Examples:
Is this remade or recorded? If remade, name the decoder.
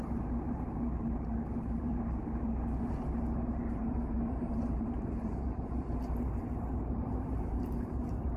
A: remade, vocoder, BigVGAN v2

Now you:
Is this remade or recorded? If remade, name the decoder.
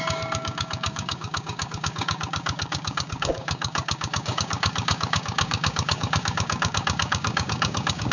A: remade, codec, DAC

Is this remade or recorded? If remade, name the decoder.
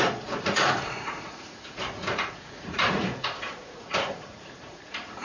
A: remade, vocoder, Vocos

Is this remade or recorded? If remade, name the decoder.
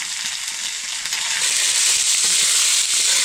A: recorded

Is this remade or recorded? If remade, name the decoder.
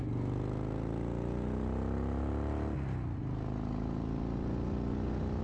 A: recorded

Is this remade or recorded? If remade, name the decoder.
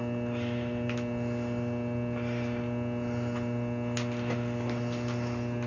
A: recorded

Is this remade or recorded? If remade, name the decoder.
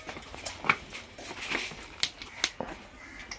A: recorded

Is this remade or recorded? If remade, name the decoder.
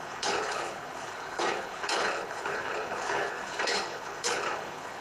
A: remade, codec, HILCodec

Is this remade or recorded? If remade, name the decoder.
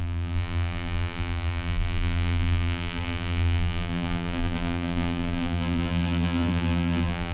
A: remade, vocoder, BigVGAN v2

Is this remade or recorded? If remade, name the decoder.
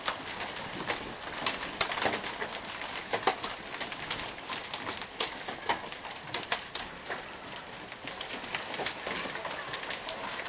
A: recorded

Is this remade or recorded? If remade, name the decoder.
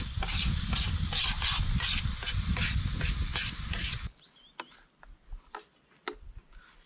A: recorded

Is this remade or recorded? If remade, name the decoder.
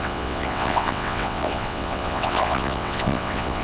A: remade, vocoder, WaveNeXt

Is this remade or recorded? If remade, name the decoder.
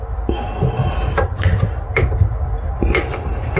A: recorded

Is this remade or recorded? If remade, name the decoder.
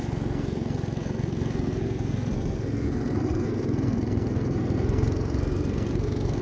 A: remade, codec, SNAC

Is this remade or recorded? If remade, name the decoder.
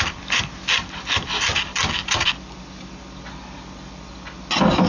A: recorded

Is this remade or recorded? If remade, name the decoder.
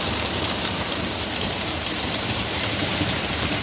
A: remade, vocoder, BigVGAN v2